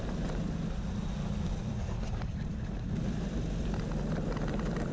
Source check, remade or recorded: recorded